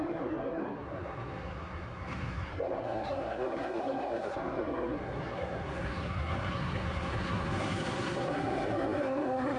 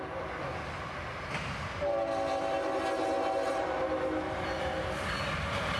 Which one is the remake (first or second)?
first